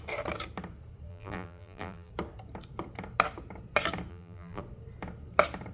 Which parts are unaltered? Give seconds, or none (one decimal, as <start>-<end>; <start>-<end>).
0.0-1.1; 2.1-4.1; 4.6-5.7

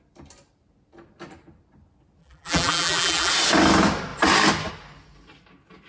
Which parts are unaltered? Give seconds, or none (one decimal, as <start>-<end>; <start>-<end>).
0.0-2.2; 3.3-5.9